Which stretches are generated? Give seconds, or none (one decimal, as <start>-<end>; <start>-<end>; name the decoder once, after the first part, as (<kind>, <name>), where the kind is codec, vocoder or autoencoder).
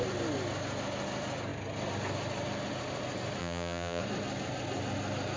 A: 3.4-4.0 (vocoder, BigVGAN v2)